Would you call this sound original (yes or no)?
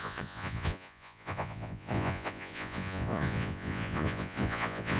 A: no